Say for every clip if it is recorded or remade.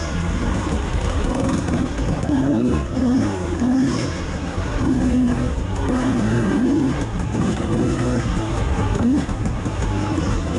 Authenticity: remade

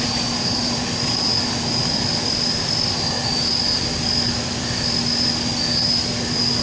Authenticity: recorded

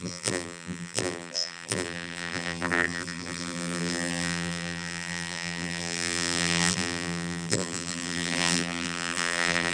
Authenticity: remade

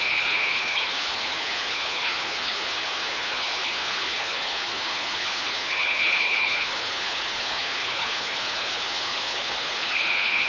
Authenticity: remade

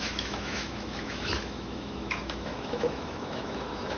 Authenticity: remade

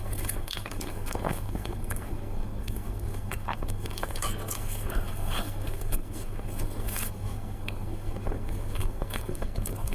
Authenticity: remade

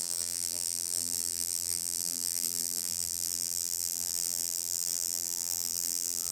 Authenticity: remade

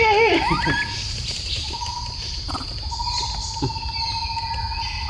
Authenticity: recorded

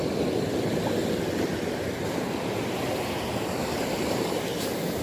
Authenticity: recorded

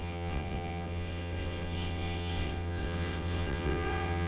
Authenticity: remade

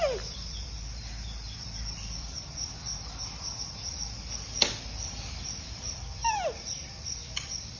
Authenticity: remade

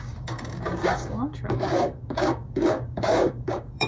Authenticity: remade